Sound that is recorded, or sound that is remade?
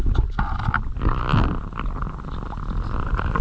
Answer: recorded